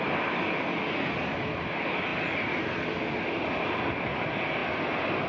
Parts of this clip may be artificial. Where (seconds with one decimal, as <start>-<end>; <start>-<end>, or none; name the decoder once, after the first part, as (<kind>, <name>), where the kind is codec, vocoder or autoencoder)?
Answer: none